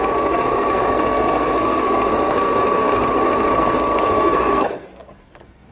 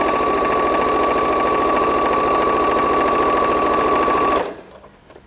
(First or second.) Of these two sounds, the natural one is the second